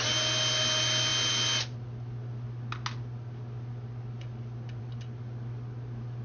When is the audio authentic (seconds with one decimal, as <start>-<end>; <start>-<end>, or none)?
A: 0.0-6.2